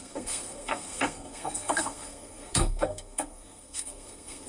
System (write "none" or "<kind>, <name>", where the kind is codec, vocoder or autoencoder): codec, SNAC